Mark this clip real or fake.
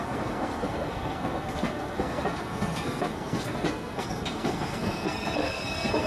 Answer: fake